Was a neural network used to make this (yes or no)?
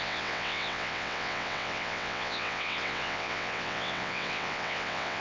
yes